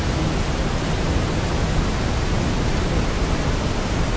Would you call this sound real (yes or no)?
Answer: yes